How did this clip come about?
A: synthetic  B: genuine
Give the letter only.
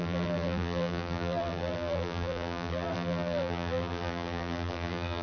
A